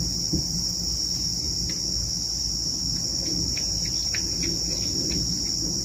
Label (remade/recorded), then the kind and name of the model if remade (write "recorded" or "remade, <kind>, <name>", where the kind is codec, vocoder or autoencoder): recorded